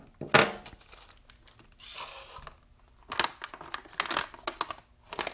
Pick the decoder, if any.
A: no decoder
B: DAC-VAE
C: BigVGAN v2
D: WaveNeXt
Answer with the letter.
A